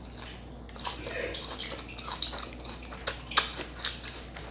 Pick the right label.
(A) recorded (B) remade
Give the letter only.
A